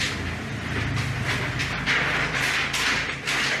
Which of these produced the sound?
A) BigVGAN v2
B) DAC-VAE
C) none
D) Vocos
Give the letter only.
C